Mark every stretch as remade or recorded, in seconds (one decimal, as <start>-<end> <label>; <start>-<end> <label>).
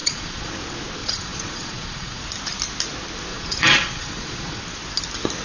0.0-0.5 remade; 0.5-1.0 recorded; 1.0-2.2 remade; 2.2-3.3 recorded; 3.3-4.6 remade; 4.6-5.4 recorded